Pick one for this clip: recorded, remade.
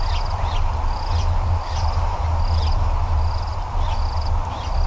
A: recorded